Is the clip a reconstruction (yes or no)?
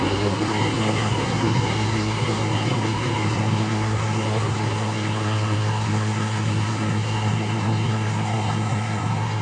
yes